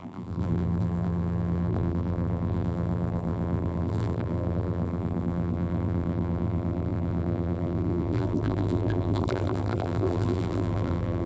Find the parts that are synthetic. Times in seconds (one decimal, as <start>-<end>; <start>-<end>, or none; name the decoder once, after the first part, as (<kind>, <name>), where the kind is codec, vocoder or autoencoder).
0.0-11.3 (vocoder, BigVGAN v2)